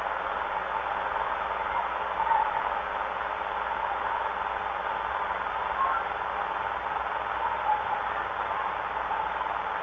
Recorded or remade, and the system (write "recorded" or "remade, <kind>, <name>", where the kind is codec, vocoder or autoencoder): recorded